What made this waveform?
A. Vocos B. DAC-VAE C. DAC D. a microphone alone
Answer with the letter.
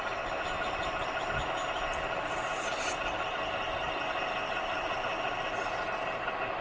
D